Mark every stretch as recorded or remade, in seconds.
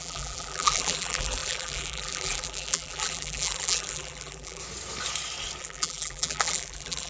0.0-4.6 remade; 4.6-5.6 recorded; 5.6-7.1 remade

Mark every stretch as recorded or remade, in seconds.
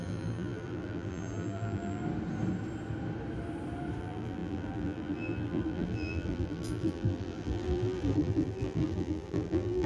0.0-2.0 remade; 2.0-4.0 recorded; 4.0-9.9 remade